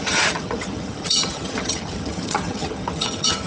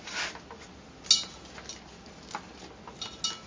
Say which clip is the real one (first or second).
second